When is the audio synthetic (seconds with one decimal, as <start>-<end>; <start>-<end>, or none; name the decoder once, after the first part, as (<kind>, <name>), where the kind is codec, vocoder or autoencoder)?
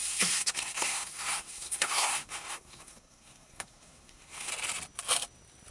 0.0-4.5 (codec, SNAC)